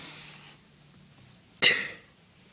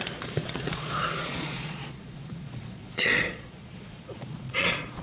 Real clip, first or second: first